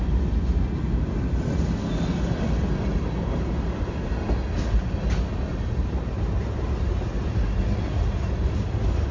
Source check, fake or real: real